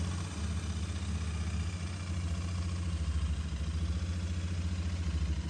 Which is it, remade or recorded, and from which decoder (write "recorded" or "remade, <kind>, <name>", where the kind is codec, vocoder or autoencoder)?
recorded